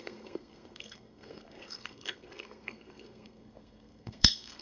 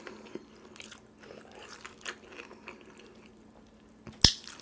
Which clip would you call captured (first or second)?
second